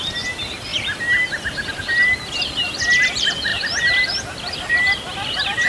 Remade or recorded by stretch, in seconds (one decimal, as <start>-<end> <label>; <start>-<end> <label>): 0.0-5.7 recorded